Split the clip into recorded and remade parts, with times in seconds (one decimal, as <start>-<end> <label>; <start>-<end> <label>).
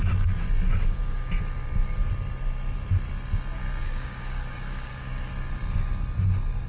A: 0.0-0.7 recorded; 0.7-1.3 remade; 1.3-3.8 recorded; 3.8-5.3 remade; 5.3-6.7 recorded